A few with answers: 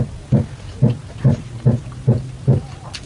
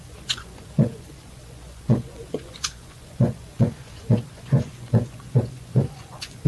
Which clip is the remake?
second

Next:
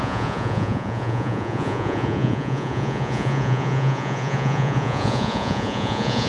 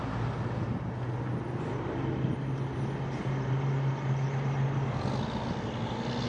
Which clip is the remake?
first